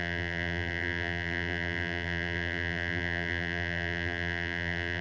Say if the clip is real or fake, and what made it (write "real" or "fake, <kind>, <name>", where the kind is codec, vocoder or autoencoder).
fake, vocoder, BigVGAN v2